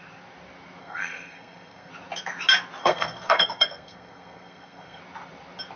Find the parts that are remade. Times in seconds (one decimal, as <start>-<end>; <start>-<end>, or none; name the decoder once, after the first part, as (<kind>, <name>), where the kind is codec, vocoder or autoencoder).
0.8-1.9 (codec, SNAC); 2.8-5.0